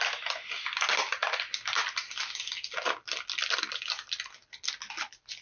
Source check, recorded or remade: recorded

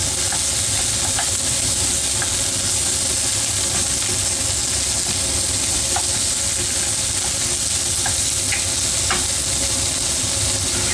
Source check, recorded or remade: recorded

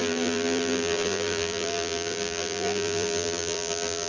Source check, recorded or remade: remade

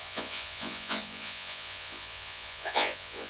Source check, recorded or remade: remade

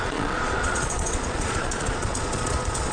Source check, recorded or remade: remade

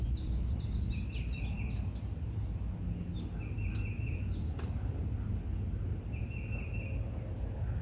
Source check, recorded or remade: recorded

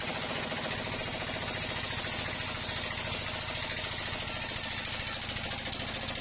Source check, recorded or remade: recorded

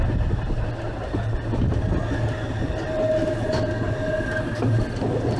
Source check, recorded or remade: recorded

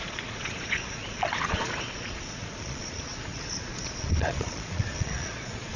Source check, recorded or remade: remade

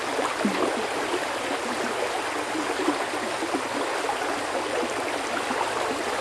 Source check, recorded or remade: recorded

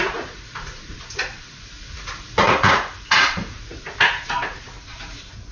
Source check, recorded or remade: remade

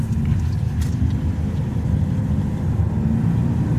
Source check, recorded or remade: recorded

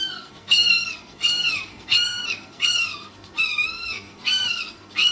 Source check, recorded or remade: remade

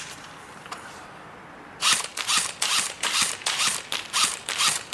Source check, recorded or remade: remade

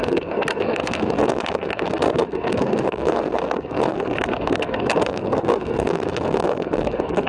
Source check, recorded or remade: remade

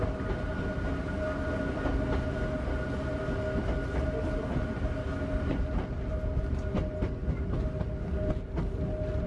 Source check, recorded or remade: recorded